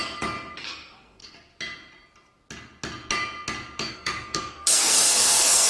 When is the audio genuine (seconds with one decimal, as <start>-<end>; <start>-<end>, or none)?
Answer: 0.0-0.6; 1.2-3.9